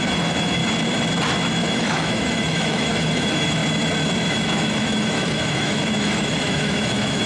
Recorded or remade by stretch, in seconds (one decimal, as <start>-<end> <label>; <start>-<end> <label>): 0.0-0.6 remade; 0.6-1.6 recorded; 1.6-3.6 remade; 3.6-4.3 recorded; 4.3-7.3 remade